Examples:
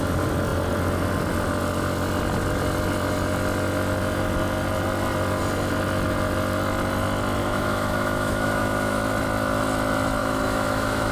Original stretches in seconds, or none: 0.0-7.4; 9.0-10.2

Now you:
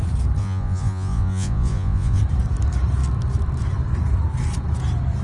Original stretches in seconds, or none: 0.0-0.4; 2.2-5.2

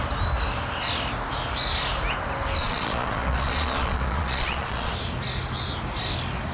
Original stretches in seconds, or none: 0.0-2.6; 4.9-6.5